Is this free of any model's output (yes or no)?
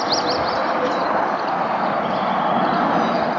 yes